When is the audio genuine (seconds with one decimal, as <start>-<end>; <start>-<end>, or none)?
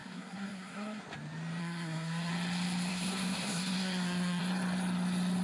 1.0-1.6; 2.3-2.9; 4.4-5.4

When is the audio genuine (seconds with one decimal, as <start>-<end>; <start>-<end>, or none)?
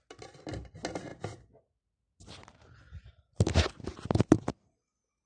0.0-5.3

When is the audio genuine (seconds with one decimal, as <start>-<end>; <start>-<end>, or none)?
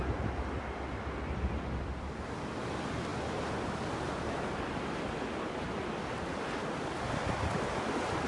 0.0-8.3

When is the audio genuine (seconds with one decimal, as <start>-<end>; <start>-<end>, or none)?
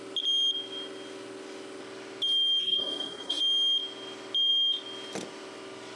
0.0-2.6; 3.4-6.0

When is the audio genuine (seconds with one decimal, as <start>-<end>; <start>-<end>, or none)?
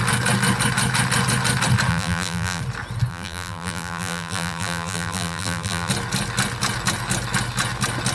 0.0-1.9; 2.6-3.1; 5.9-8.1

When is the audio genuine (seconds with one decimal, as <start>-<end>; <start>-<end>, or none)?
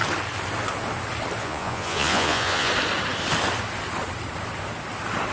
0.0-1.4; 2.7-5.3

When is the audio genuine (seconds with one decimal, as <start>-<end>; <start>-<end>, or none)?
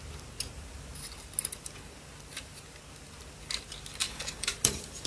0.0-4.0